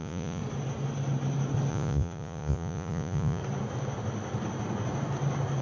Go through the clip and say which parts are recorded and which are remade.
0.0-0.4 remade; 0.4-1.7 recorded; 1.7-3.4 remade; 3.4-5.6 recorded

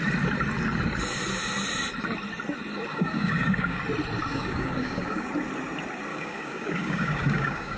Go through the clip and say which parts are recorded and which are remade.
0.0-2.9 recorded; 2.9-3.8 remade; 3.8-4.3 recorded; 4.3-5.3 remade; 5.3-6.1 recorded; 6.1-7.8 remade

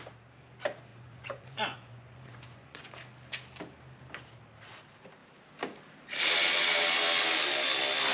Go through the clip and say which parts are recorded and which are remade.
0.0-0.9 recorded; 0.9-2.9 remade; 2.9-8.1 recorded